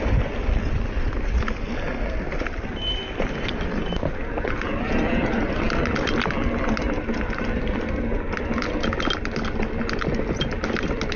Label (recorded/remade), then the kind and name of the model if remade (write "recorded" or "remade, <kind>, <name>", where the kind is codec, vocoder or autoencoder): recorded